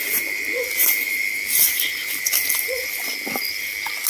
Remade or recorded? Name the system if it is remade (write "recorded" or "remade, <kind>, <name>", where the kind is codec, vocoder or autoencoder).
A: recorded